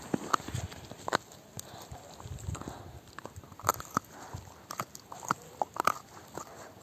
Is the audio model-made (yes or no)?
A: no